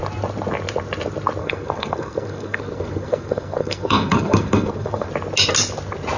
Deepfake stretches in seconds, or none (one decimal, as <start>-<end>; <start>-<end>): 1.4-5.1